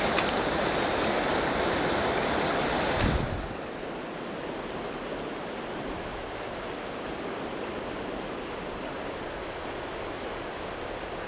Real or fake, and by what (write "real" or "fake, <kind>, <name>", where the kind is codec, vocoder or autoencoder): real